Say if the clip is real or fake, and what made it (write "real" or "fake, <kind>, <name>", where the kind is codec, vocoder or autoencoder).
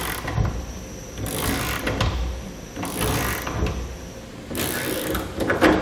real